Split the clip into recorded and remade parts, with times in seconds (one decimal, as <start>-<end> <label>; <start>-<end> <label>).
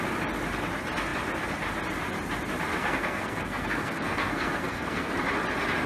0.0-2.7 recorded; 2.7-5.1 remade; 5.1-5.9 recorded